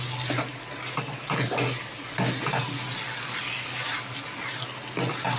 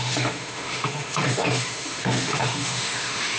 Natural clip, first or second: first